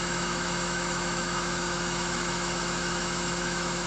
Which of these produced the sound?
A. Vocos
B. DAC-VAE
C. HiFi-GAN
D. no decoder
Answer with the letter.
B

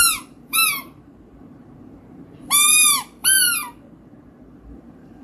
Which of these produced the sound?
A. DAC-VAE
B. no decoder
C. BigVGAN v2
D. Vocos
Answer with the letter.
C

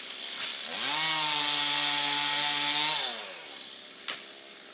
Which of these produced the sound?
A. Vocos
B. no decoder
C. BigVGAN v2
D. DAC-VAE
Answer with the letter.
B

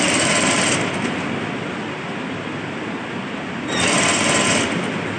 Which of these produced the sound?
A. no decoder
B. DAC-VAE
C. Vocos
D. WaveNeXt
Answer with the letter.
A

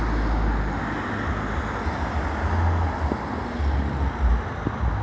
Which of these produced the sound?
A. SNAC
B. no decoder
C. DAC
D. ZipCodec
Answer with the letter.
B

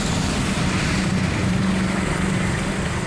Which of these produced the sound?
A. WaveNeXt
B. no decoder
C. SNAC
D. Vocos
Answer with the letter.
B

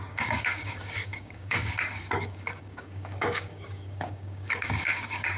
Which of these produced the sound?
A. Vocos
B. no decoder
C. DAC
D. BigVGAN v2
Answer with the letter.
C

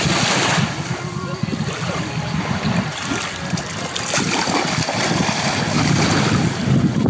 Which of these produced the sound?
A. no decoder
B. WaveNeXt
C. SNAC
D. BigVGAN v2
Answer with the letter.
A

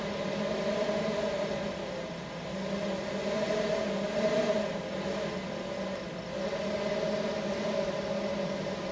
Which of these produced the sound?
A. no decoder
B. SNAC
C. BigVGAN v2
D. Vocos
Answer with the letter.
A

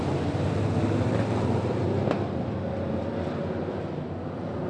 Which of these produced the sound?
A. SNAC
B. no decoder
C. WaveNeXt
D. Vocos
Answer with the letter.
B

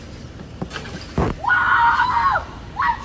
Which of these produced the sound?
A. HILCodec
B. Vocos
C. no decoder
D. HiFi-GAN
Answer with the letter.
C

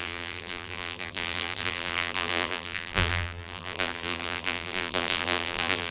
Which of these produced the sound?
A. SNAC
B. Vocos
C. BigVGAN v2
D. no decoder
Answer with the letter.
C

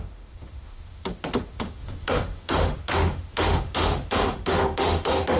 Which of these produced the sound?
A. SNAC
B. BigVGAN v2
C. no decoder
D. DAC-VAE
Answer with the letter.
D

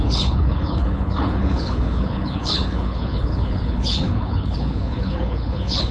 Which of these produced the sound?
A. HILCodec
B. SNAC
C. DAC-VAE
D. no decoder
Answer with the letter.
A